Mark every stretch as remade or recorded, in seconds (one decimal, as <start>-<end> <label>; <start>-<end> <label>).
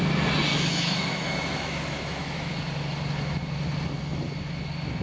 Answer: 0.0-0.5 recorded; 0.5-2.5 remade; 2.5-5.0 recorded